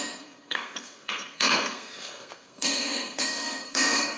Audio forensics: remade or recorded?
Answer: remade